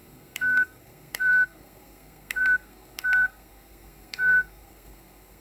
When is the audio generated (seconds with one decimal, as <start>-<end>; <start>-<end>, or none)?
0.0-5.4